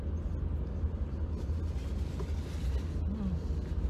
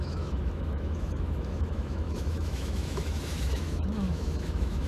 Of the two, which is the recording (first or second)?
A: first